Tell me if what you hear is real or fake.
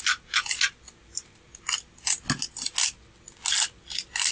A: real